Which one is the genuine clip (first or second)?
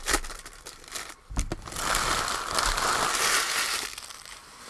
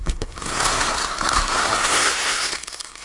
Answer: first